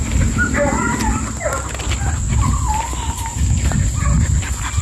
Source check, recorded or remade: recorded